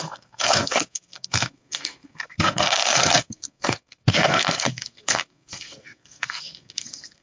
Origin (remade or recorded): remade